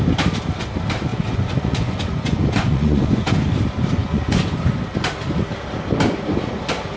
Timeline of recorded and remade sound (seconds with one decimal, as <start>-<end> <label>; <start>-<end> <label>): 0.0-1.1 recorded; 1.1-3.5 remade; 3.5-4.0 recorded; 4.0-4.6 remade; 4.6-7.0 recorded